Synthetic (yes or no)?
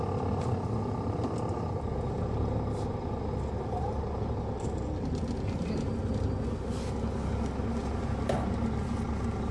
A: no